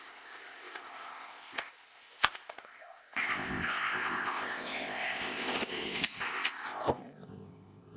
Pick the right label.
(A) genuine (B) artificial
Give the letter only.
B